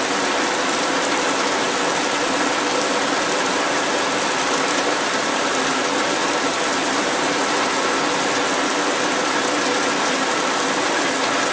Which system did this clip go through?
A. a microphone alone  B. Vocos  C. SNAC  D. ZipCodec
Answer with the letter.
A